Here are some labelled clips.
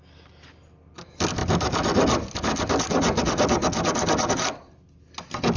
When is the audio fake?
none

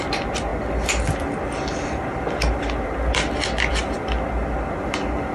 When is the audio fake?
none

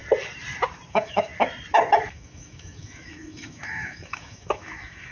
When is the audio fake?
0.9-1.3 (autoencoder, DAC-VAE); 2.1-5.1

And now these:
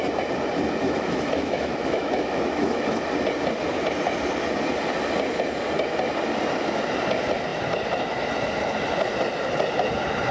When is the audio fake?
0.8-3.0 (autoencoder, DAC-VAE)

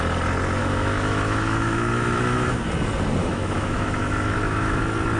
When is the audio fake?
0.6-2.6 (autoencoder, DAC-VAE); 3.2-4.8

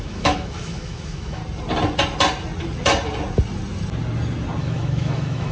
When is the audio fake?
0.0-1.4 (autoencoder, DAC-VAE); 4.6-5.5